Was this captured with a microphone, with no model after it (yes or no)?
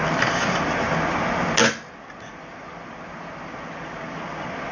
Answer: yes